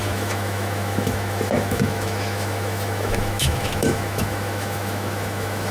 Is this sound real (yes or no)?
no